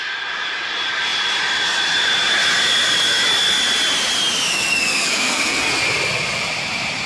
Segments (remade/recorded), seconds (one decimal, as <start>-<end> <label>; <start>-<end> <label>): 0.0-4.5 recorded; 4.5-5.7 remade; 5.7-7.1 recorded